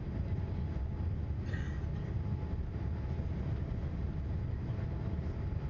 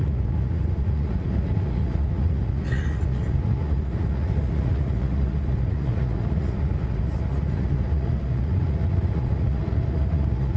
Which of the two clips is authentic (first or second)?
first